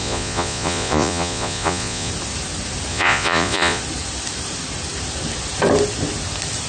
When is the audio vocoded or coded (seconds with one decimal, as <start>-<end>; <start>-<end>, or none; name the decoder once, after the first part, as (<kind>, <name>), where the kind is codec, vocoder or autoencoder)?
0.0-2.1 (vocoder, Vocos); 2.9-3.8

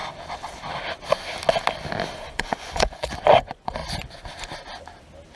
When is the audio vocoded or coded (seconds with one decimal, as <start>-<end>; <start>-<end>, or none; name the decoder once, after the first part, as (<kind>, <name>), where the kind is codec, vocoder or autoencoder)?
2.2-3.8 (vocoder, Vocos)

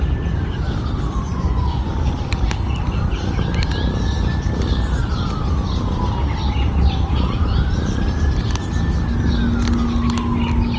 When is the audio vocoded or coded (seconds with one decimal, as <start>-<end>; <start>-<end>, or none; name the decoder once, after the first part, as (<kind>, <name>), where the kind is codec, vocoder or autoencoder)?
1.3-1.9 (vocoder, Vocos)

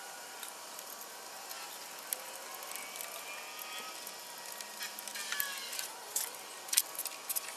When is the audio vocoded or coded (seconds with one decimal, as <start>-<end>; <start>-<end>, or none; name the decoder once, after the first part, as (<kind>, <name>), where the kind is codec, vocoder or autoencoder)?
none

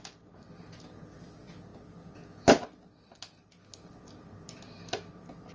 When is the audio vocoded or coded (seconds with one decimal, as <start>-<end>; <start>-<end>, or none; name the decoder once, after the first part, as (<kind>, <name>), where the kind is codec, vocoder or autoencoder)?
none

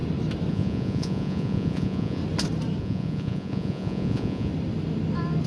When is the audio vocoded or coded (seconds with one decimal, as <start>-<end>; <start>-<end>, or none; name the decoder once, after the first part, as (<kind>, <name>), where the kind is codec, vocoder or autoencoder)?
0.5-2.2 (vocoder, Vocos); 2.8-4.5